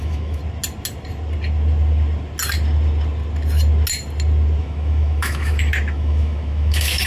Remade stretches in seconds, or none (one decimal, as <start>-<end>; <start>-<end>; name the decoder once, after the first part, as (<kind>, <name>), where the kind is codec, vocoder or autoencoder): 0.0-0.4 (autoencoder, DAC-VAE); 4.6-7.1